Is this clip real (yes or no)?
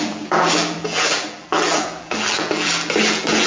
no